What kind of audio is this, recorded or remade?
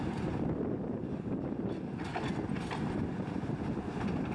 recorded